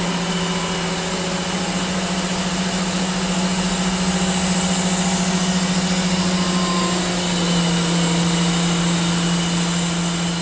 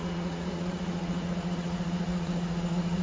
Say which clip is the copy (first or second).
second